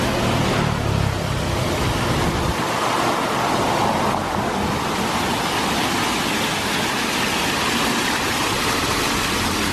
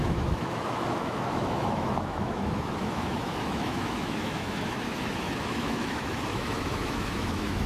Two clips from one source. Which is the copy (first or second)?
second